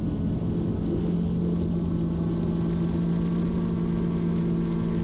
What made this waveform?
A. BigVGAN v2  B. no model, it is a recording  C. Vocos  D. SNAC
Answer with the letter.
B